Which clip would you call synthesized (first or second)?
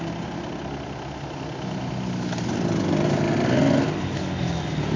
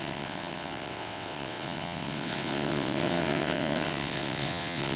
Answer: second